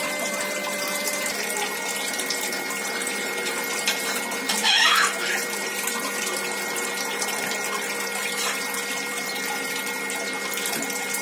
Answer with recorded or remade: remade